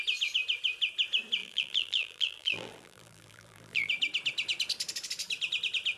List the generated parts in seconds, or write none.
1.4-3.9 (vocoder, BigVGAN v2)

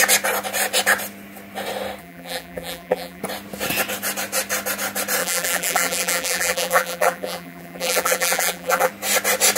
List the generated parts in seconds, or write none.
2.0-3.2 (vocoder, BigVGAN v2); 5.2-8.9

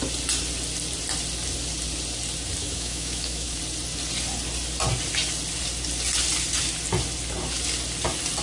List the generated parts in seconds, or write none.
2.6-3.6 (autoencoder, DAC-VAE)